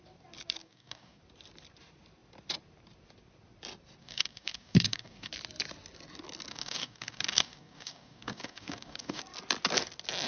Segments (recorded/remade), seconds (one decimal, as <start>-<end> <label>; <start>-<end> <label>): 0.0-0.6 recorded; 0.6-1.2 remade; 1.2-4.0 recorded; 4.0-5.3 remade; 5.3-6.5 recorded; 6.5-9.2 remade; 9.2-10.3 recorded